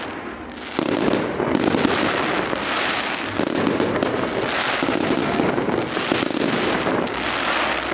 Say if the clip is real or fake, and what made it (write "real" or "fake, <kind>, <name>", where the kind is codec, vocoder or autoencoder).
real